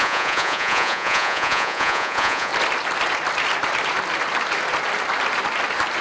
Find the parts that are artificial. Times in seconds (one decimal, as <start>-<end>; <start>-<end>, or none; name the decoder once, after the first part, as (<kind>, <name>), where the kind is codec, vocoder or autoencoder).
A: 0.0-2.5 (vocoder, Vocos)